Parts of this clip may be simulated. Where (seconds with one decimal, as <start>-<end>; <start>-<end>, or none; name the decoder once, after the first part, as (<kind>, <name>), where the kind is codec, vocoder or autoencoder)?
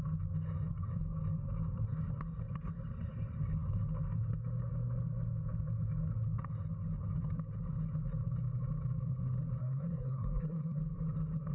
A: 9.6-10.8 (codec, SNAC)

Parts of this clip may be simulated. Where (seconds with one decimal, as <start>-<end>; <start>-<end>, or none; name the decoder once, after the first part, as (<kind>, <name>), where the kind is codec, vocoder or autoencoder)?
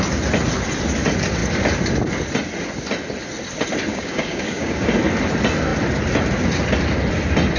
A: 3.9-4.9 (codec, DAC)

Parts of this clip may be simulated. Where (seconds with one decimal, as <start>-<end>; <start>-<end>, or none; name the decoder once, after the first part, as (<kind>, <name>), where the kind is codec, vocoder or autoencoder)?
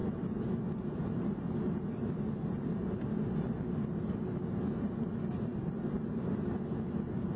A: none